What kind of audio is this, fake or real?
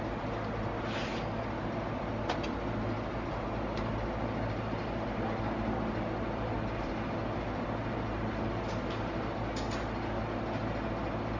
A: real